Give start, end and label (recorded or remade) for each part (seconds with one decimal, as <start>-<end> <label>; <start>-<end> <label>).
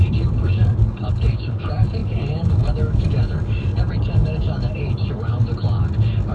0.0-5.5 remade; 5.5-6.3 recorded